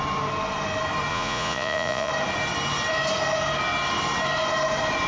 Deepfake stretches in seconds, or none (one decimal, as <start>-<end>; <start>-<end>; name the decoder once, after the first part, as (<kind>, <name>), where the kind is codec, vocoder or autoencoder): 1.1-2.1 (vocoder, Vocos)